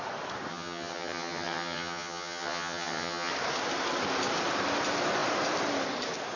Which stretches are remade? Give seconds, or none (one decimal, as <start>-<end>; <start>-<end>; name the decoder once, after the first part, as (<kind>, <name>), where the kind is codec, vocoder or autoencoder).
0.5-3.3 (vocoder, HiFi-GAN)